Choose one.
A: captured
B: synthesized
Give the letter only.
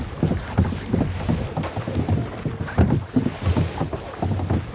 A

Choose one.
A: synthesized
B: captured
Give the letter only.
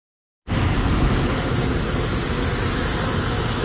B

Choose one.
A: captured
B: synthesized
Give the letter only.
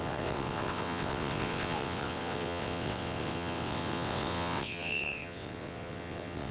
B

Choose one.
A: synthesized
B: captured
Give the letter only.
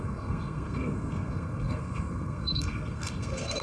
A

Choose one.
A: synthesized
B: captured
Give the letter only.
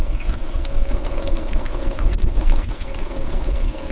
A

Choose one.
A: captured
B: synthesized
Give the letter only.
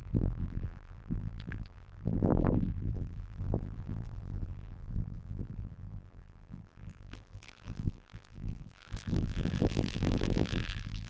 B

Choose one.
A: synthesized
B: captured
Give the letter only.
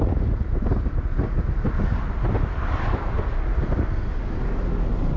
B